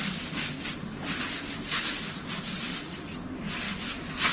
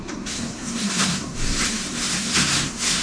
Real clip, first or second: first